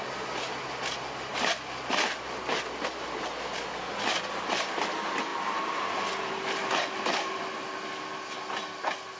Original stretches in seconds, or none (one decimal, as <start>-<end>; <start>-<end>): 0.0-9.2